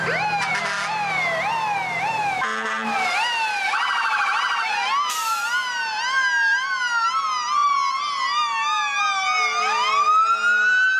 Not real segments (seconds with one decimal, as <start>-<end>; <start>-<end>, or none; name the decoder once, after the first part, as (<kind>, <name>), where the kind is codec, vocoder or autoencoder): none